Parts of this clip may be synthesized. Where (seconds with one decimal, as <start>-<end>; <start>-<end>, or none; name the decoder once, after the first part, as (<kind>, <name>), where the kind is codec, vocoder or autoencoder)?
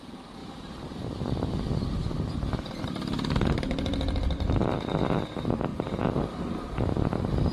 0.0-7.5 (vocoder, BigVGAN v2)